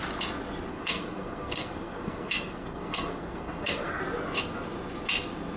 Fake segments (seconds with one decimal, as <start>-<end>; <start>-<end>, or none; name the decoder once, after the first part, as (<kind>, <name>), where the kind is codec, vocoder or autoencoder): 0.7-4.0 (codec, SNAC)